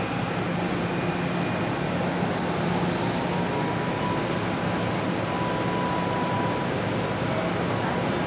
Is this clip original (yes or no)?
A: yes